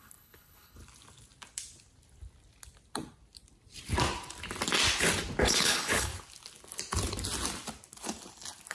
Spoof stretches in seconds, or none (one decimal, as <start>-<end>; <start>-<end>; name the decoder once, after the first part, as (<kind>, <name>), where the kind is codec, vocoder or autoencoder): 0.0-0.8 (codec, HILCodec); 5.4-6.1